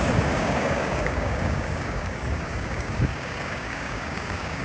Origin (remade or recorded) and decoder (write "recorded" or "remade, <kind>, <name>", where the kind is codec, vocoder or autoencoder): remade, codec, DAC